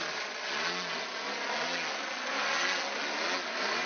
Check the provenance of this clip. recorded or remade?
recorded